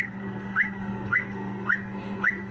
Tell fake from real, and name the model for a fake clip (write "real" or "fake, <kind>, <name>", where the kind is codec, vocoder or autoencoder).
fake, codec, SNAC